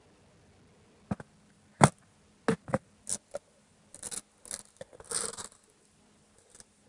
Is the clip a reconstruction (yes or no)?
no